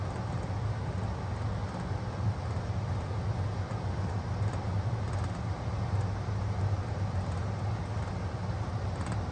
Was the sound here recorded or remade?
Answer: recorded